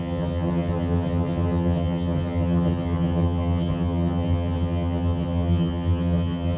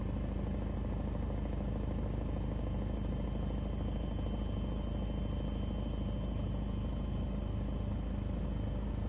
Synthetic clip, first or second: first